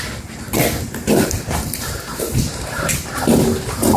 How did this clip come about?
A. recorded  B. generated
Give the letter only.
A